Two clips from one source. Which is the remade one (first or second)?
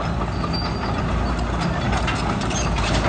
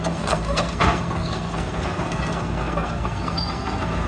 second